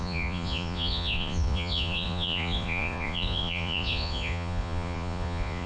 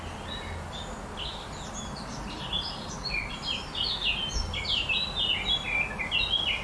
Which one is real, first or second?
second